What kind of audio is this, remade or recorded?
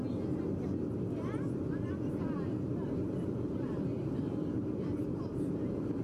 recorded